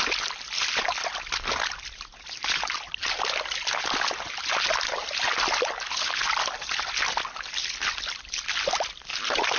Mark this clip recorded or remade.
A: recorded